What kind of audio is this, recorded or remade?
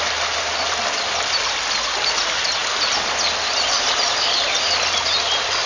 recorded